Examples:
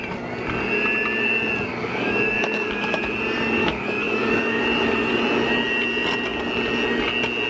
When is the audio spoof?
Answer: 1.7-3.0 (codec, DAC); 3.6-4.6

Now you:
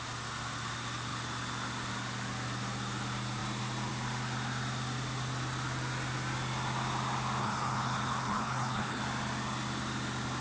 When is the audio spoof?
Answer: 7.4-9.0 (codec, HILCodec)

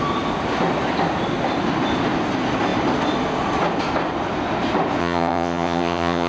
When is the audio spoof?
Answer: 5.0-6.3 (vocoder, HiFi-GAN)

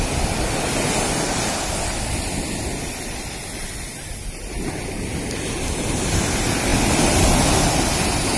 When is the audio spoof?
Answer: none

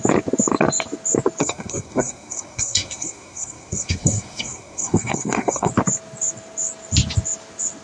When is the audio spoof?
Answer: 1.4-5.7 (codec, SNAC)